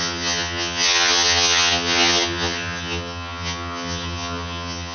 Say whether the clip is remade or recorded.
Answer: remade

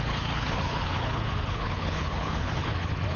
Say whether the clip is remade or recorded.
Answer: remade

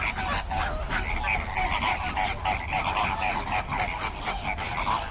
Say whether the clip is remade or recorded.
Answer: recorded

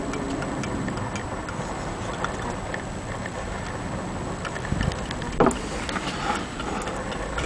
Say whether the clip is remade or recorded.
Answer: recorded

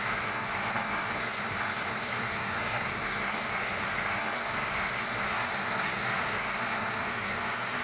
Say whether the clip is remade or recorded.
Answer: remade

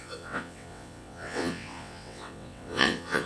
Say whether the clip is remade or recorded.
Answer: remade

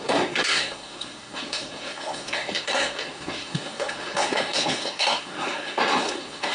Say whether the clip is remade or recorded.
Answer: remade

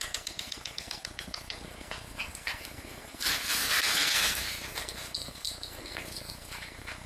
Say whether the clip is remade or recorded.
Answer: remade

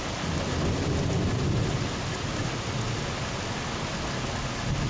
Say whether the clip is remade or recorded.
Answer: recorded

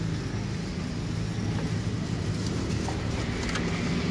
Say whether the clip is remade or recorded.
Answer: recorded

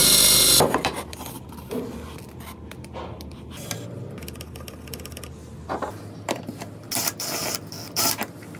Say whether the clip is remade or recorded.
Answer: recorded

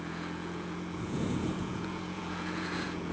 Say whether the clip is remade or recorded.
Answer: remade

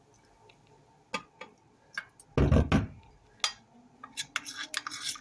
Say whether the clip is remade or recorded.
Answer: recorded